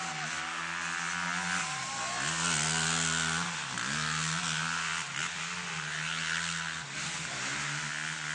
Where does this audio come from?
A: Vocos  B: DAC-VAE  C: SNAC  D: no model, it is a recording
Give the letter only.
D